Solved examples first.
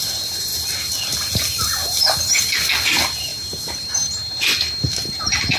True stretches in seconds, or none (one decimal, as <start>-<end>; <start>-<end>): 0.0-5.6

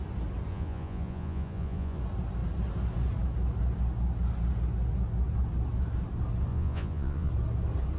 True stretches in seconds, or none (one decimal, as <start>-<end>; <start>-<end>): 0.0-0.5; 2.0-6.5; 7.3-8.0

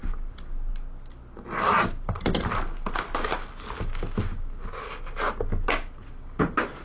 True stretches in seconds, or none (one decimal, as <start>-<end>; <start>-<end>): 0.0-6.8